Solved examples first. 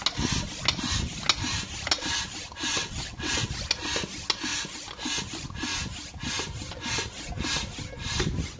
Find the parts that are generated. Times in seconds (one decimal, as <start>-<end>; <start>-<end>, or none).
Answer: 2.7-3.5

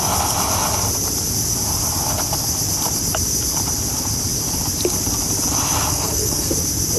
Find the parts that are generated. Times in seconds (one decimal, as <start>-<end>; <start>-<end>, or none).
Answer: 5.9-6.5

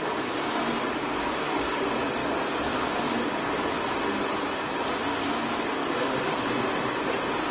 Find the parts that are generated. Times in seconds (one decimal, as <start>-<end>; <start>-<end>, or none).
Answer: 1.0-1.8; 2.2-3.0; 5.8-6.4

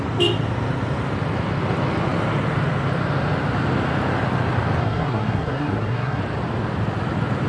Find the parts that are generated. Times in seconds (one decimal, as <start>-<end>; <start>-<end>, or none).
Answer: 4.8-6.2